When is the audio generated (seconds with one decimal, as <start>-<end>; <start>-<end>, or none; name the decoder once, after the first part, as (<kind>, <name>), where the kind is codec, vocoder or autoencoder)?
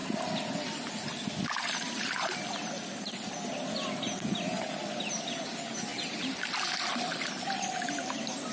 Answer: none